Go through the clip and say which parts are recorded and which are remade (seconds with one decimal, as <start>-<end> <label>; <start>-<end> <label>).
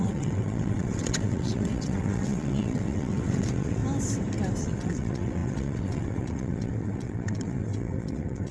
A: 0.0-3.8 remade; 3.8-4.6 recorded; 4.6-8.5 remade